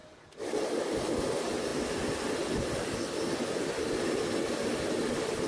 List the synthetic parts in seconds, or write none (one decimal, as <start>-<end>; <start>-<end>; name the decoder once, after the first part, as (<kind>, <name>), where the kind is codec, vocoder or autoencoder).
none